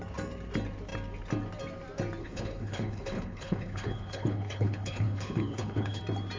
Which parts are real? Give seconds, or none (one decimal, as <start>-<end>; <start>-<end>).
0.0-2.2; 6.0-6.4

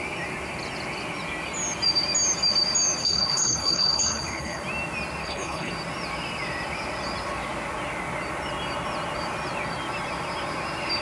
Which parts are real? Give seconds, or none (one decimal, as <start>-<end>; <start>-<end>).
0.0-3.0; 4.6-5.2; 5.7-11.0